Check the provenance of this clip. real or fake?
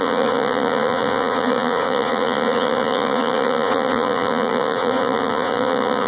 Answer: fake